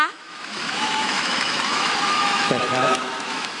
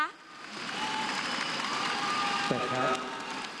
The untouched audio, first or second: second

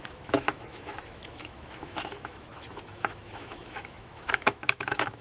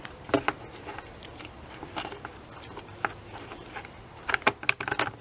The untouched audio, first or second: second